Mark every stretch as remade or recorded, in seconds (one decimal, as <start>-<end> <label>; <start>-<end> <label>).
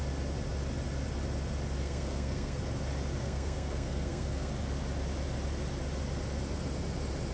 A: 0.0-1.8 recorded; 1.8-2.6 remade; 2.6-3.2 recorded; 3.2-4.5 remade; 4.5-7.3 recorded